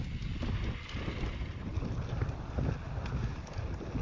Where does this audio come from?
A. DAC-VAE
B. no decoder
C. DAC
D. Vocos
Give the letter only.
B